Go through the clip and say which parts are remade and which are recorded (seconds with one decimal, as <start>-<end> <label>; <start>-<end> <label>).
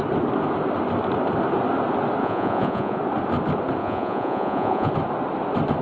0.0-2.2 recorded; 2.2-3.0 remade; 3.0-3.8 recorded; 3.8-4.9 remade; 4.9-5.8 recorded